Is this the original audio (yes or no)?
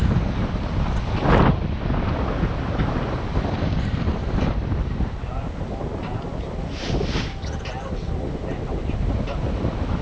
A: yes